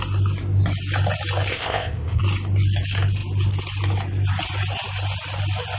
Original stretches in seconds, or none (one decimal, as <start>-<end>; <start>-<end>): 0.0-1.5; 2.2-5.8